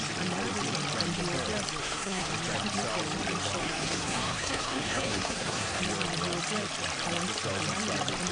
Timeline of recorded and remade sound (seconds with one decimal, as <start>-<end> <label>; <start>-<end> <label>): 0.0-1.8 recorded; 1.8-2.3 remade; 2.3-3.6 recorded; 3.6-5.8 remade; 5.8-8.3 recorded